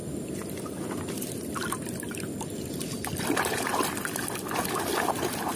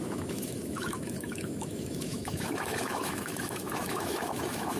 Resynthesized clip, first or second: second